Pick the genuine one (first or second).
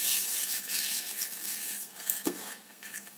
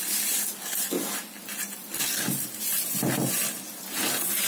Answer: second